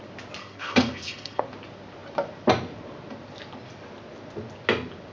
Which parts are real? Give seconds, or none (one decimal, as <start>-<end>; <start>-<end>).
0.0-0.4; 1.4-5.1